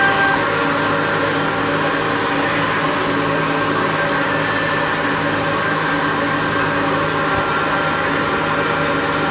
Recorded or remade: recorded